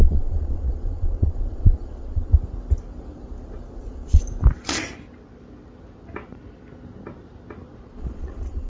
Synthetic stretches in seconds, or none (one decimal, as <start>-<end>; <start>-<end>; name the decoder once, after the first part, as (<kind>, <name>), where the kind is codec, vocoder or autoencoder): 0.0-2.3 (vocoder, Vocos); 3.8-4.2; 7.8-8.7